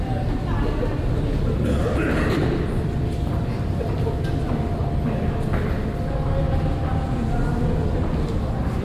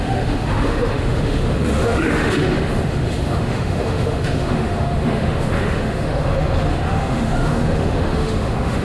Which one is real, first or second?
first